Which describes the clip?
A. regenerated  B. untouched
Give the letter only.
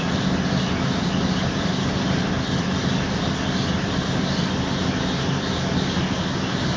B